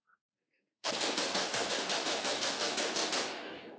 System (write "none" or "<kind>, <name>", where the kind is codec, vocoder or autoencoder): codec, DAC